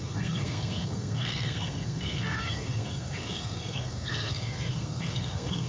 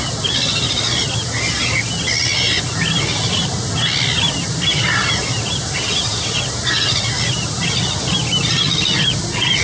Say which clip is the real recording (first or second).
second